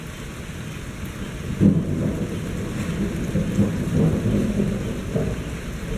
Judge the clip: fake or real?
real